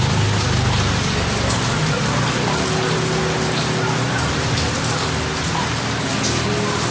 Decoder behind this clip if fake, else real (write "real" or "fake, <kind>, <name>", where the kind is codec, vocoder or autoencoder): real